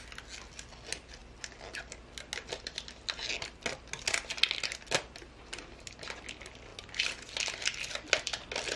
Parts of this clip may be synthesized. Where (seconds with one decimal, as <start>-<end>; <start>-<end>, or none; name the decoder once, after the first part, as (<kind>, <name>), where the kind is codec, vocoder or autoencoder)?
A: 1.2-2.1 (vocoder, BigVGAN v2); 6.7-7.3